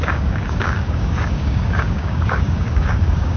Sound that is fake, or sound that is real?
fake